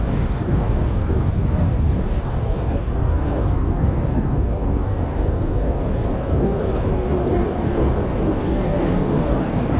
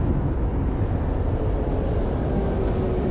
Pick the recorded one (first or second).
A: second